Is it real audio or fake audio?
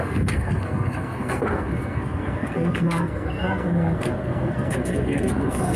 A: fake